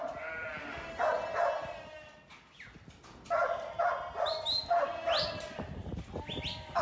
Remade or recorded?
recorded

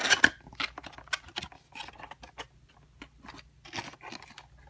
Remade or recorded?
recorded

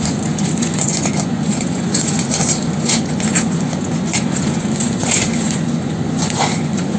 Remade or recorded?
remade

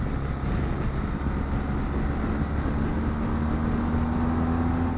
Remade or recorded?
recorded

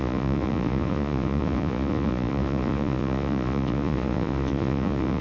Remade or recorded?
remade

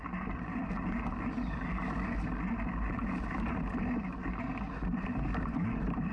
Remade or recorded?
recorded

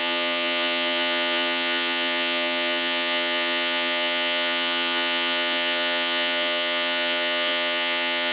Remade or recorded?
remade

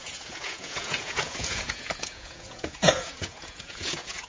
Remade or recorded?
remade